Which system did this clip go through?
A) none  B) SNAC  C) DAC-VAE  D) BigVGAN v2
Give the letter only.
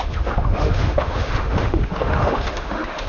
C